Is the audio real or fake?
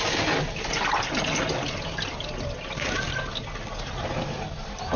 real